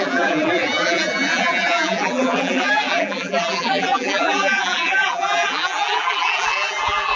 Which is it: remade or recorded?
remade